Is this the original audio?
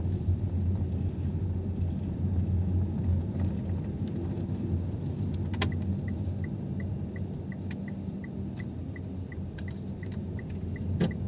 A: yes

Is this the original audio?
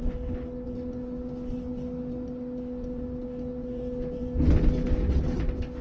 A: yes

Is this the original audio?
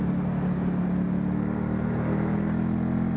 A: yes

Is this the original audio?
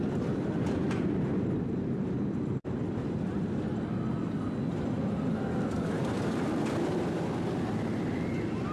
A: yes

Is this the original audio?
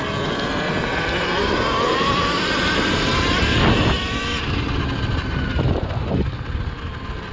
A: yes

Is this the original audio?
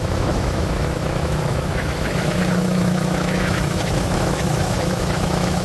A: no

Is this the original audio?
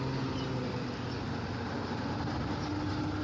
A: yes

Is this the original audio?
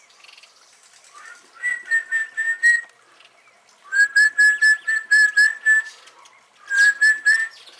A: yes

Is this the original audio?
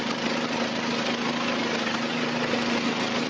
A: yes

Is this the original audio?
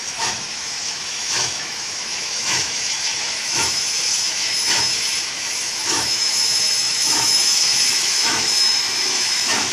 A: no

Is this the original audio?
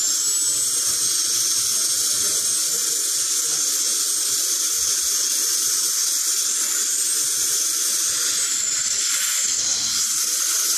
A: yes